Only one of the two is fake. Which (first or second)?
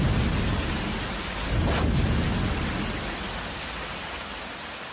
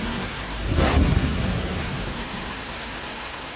second